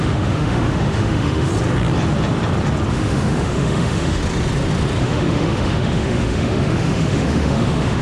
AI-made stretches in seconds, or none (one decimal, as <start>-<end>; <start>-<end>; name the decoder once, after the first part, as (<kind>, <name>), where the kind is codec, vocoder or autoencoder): 0.0-1.5 (autoencoder, DAC-VAE); 2.9-4.2; 5.0-8.0

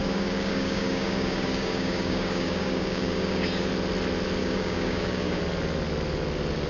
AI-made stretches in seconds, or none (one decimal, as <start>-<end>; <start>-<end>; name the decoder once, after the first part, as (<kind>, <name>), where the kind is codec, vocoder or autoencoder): 0.0-3.7 (codec, DAC); 4.4-5.4